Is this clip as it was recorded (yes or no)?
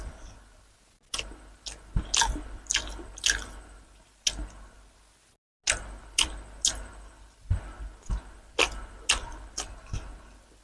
yes